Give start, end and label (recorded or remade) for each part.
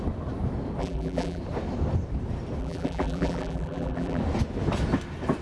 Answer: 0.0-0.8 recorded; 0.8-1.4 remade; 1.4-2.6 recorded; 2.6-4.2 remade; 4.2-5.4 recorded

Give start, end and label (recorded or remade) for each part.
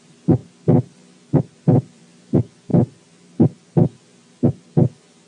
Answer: 0.0-5.3 remade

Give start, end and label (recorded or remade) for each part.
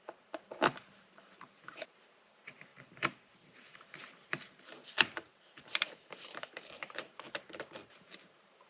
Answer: 0.0-8.7 remade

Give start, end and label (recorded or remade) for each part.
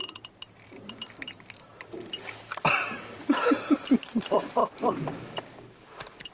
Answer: 0.0-6.3 remade